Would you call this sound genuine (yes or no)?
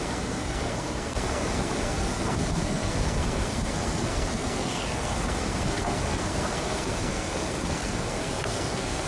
no